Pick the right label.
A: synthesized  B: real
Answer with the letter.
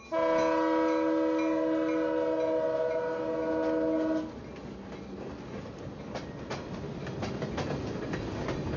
B